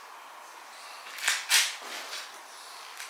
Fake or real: real